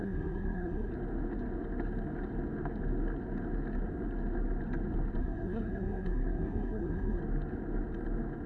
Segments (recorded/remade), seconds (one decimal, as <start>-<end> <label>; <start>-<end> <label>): 0.0-0.9 remade; 0.9-5.2 recorded; 5.2-7.2 remade; 7.2-8.5 recorded